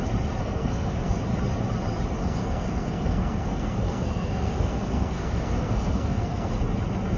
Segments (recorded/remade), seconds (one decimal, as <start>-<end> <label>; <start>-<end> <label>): 0.0-0.4 recorded; 0.4-1.2 remade; 1.2-2.2 recorded; 2.2-6.5 remade; 6.5-7.2 recorded